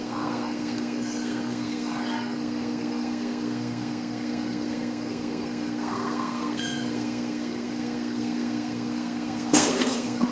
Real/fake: fake